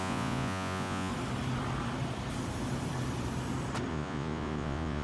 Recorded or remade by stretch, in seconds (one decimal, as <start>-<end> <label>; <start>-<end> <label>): 0.0-1.1 remade; 1.1-3.9 recorded; 3.9-5.0 remade